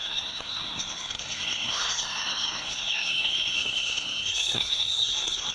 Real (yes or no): no